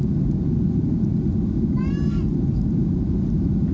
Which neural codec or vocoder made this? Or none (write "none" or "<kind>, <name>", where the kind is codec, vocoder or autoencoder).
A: none